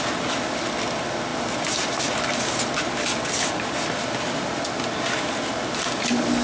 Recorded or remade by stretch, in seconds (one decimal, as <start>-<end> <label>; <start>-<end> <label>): 0.0-6.4 recorded